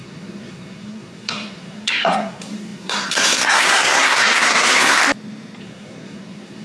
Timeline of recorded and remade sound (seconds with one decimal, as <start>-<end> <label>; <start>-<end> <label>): 0.0-5.0 remade; 5.0-5.6 recorded; 5.6-6.6 remade

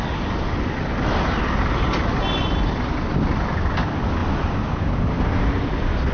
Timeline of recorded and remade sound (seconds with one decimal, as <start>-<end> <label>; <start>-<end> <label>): 0.0-6.1 recorded